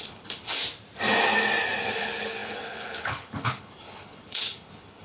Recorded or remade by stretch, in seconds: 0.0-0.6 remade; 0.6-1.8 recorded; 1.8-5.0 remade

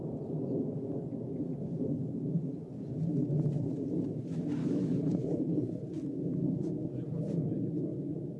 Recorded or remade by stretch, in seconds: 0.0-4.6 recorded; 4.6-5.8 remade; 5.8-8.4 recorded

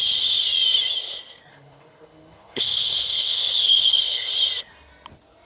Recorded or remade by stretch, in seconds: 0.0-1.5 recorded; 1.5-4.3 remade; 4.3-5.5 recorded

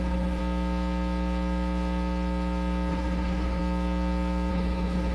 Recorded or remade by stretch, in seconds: 0.0-0.4 remade; 0.4-2.9 recorded; 2.9-3.6 remade; 3.6-4.5 recorded; 4.5-5.1 remade

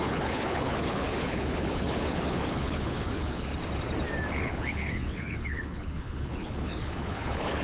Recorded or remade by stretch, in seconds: 0.0-3.5 remade; 3.5-4.3 recorded; 4.3-7.6 remade